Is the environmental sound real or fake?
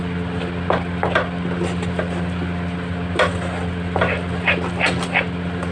real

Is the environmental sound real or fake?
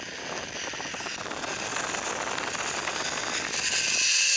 real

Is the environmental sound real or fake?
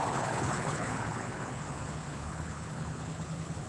fake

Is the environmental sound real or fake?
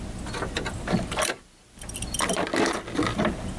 real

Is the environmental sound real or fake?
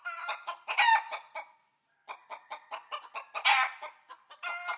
real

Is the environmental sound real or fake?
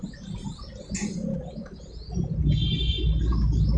real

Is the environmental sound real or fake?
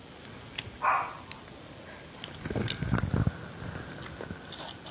real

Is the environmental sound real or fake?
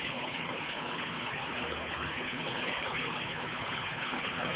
fake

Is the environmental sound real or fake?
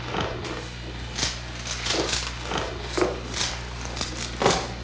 real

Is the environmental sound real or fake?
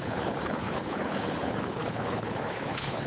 fake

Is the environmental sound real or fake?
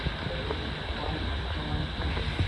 real